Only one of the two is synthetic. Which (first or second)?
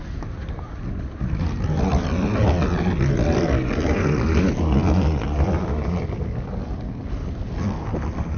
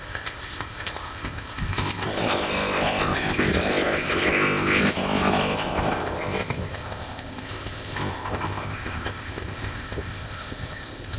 second